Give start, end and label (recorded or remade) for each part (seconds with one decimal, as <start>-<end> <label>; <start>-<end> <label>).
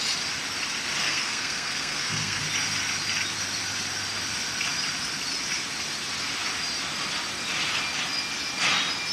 0.0-1.0 recorded; 1.0-2.4 remade; 2.4-9.1 recorded